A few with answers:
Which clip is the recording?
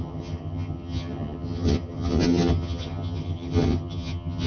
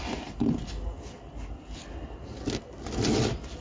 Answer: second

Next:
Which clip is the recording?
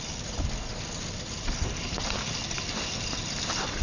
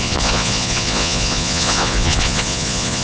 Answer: first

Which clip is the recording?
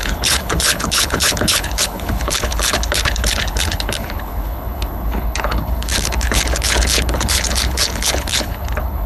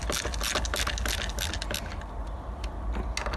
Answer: second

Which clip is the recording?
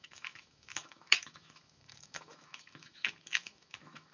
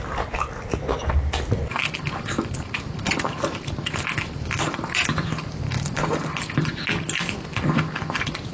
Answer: second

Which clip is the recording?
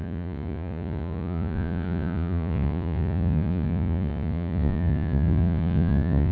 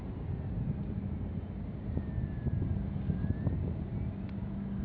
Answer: second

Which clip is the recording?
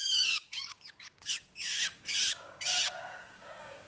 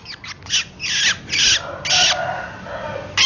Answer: second